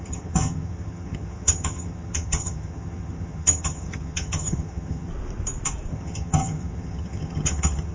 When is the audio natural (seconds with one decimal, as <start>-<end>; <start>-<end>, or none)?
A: 5.1-5.9